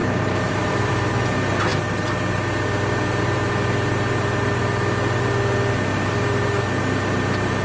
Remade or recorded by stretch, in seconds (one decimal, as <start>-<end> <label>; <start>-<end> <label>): 0.0-0.9 remade; 0.9-7.6 recorded